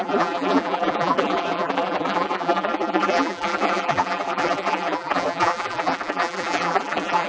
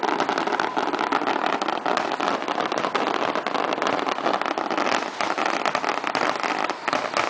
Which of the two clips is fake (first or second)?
first